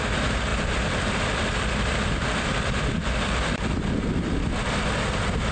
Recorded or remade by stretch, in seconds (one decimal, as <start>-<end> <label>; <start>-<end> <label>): 0.0-0.5 recorded; 0.5-3.8 remade; 3.8-5.5 recorded